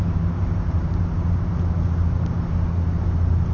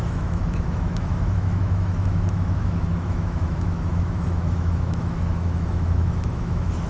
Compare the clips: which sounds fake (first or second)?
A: second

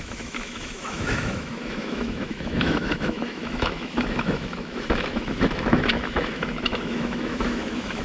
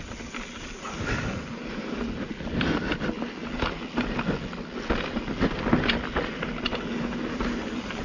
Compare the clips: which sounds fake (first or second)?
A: first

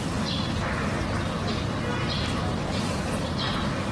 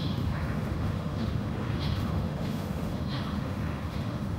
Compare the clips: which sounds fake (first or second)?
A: second